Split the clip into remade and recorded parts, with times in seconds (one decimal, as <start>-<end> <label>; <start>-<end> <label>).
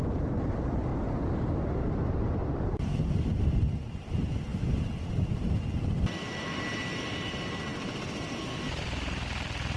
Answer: 0.0-0.9 remade; 0.9-1.8 recorded; 1.8-4.5 remade; 4.5-6.0 recorded; 6.0-7.7 remade; 7.7-8.6 recorded; 8.6-9.8 remade